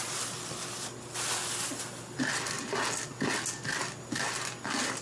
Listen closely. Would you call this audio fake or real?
real